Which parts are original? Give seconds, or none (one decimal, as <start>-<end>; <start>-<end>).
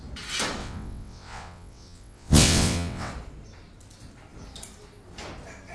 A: 0.0-0.6; 3.1-5.7